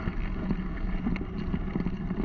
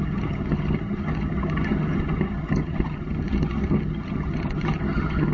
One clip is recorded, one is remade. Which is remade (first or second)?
second